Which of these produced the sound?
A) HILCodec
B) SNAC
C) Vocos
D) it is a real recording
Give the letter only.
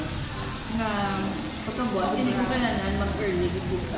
D